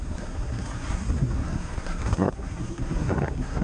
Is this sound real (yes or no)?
no